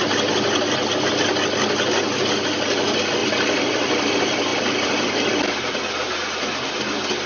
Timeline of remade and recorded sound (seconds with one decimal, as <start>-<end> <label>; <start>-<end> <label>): 0.0-3.2 recorded; 3.2-4.0 remade; 4.0-4.5 recorded; 4.5-5.7 remade; 5.7-7.3 recorded